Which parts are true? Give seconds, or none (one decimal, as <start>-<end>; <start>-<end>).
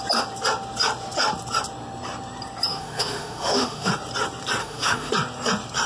0.0-2.7; 3.9-4.6; 5.1-5.9